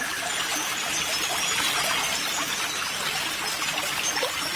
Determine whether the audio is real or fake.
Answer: real